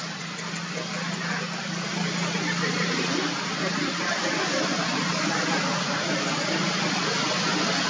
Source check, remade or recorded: recorded